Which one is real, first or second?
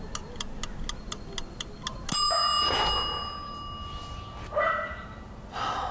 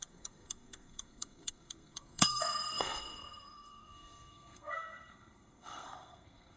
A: first